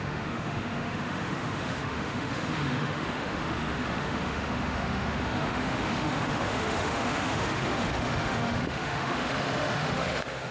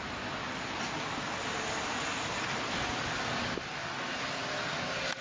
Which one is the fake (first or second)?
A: first